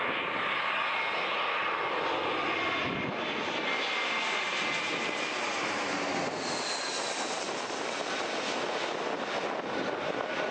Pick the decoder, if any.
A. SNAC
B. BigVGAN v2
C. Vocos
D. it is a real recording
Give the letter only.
D